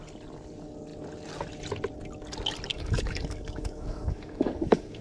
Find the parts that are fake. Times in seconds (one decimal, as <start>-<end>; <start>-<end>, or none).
2.7-5.0